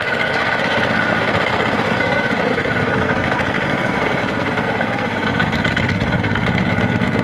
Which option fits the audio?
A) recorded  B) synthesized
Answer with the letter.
B